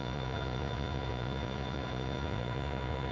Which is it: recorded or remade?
remade